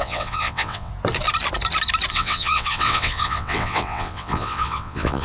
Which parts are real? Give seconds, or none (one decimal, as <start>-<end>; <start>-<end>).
0.9-2.1